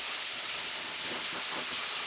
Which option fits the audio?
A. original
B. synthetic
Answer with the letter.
A